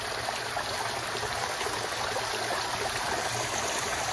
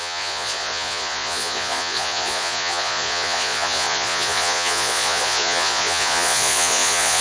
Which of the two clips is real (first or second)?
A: first